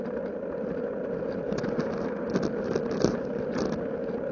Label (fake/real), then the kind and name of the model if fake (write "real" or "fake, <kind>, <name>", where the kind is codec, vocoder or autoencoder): real